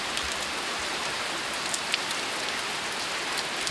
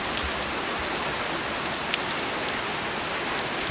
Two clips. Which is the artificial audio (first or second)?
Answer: first